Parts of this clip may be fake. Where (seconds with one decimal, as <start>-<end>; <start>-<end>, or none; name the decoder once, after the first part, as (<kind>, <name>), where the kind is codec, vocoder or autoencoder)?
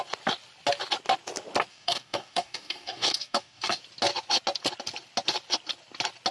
1.7-3.8 (codec, DAC)